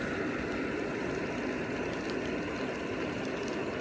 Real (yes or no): yes